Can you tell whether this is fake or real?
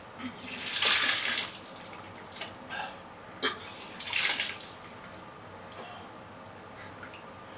real